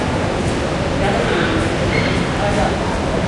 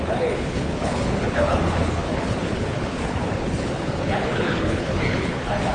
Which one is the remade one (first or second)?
second